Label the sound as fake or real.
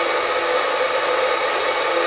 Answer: real